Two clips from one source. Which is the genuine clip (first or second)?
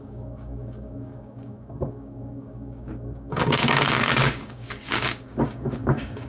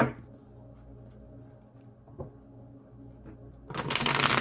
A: second